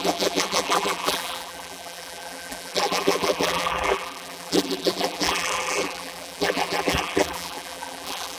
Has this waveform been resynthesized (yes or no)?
yes